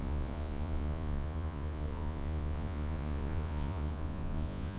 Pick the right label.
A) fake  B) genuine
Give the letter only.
A